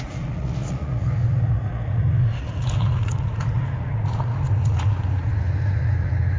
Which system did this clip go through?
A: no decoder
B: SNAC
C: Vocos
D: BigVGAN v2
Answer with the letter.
C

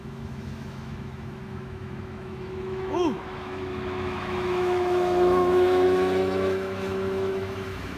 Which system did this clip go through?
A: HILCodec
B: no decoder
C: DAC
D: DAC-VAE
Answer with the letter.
D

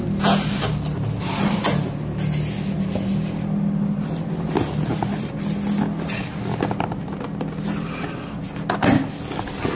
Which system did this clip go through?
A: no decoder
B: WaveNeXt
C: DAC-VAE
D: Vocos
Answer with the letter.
A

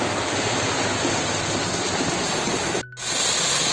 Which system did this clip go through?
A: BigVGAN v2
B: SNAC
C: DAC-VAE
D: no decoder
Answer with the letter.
D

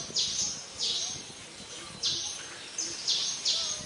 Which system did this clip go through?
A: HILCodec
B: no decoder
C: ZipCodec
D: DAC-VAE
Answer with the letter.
B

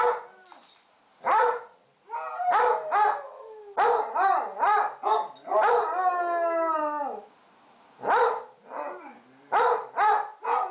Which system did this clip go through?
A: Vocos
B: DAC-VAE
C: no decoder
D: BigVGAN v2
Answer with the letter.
C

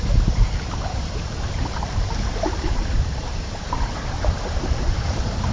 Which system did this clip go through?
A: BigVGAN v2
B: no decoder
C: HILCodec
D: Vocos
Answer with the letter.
A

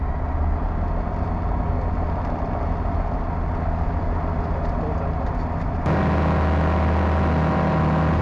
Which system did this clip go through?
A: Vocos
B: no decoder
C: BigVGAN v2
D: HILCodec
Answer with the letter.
B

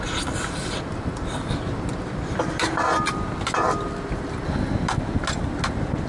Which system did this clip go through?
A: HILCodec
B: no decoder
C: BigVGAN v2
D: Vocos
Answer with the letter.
B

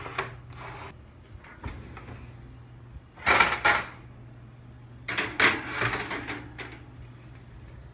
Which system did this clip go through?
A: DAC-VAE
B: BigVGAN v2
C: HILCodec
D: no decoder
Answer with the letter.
D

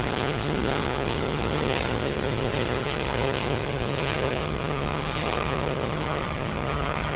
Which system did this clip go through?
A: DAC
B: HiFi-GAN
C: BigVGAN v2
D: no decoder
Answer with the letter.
B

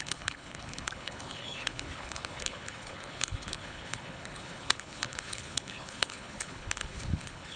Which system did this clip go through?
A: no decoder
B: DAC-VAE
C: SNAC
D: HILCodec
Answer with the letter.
D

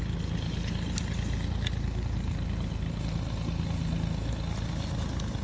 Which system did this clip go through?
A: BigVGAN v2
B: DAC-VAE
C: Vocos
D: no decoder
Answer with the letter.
D